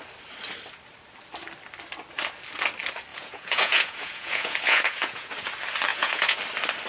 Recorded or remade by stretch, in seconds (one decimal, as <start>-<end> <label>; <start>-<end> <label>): 0.0-3.1 recorded; 3.1-5.3 remade; 5.3-5.9 recorded; 5.9-6.4 remade; 6.4-6.9 recorded

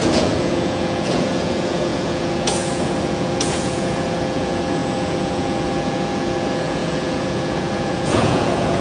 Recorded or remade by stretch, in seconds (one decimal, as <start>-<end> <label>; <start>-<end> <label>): 0.0-8.8 remade

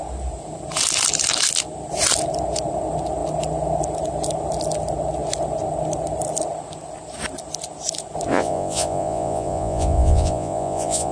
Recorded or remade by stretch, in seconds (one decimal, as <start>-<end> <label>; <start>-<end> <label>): 0.0-8.3 recorded; 8.3-11.1 remade

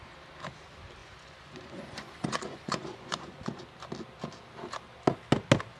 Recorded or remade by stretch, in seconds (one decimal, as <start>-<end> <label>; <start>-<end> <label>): 0.0-1.0 recorded; 1.0-3.6 remade; 3.6-5.8 recorded

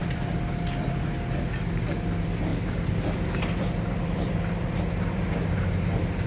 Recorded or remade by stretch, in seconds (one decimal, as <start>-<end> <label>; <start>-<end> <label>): 0.0-6.3 recorded

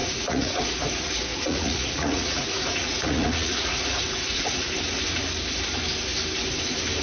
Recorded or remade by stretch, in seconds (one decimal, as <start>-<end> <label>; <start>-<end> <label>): 0.0-0.6 remade; 0.6-1.3 recorded; 1.3-4.7 remade; 4.7-7.0 recorded

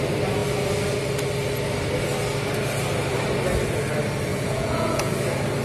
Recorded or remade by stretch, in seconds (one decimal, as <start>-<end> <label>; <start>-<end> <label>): 0.0-4.3 recorded; 4.3-5.1 remade; 5.1-5.6 recorded